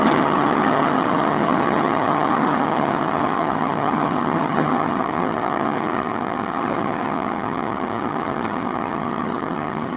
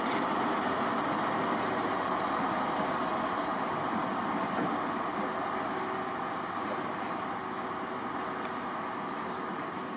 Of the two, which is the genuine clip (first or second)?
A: second